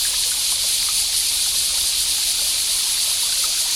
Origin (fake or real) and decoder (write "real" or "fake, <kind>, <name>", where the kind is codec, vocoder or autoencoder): fake, vocoder, BigVGAN v2